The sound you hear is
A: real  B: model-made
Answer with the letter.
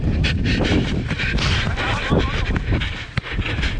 A